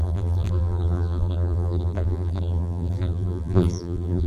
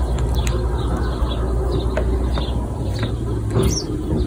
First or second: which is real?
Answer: second